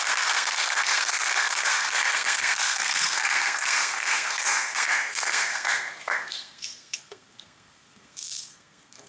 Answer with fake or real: fake